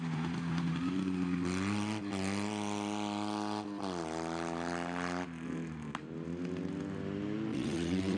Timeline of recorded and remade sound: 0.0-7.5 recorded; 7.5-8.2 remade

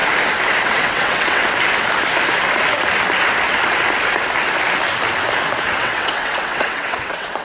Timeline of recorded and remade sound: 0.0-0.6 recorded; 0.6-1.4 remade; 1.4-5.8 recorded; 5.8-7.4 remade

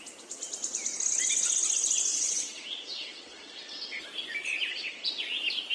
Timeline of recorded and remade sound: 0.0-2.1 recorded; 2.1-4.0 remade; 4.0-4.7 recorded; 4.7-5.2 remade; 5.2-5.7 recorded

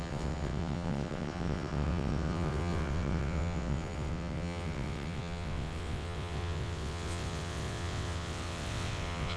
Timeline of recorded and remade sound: 0.0-9.4 remade

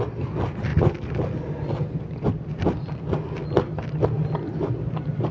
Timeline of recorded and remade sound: 0.0-5.3 recorded

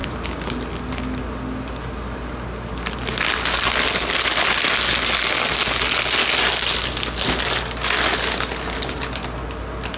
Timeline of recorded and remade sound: 0.0-10.0 recorded

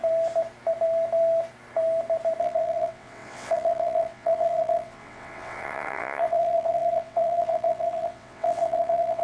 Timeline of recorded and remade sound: 0.0-2.4 recorded; 2.4-9.2 remade

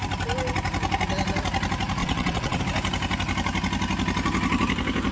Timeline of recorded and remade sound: 0.0-2.0 recorded; 2.0-2.6 remade; 2.6-5.1 recorded